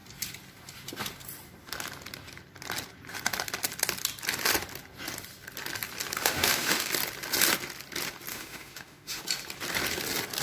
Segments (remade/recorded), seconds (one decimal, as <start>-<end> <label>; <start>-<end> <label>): 0.0-6.2 recorded; 6.2-6.9 remade; 6.9-8.3 recorded; 8.3-9.2 remade; 9.2-10.4 recorded